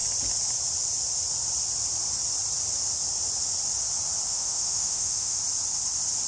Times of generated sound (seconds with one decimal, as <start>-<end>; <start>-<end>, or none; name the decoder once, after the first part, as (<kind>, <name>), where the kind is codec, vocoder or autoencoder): 4.3-5.4 (autoencoder, DAC-VAE)